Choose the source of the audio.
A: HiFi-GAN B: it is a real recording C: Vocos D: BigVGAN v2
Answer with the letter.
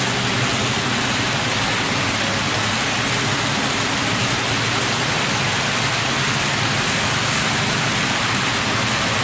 B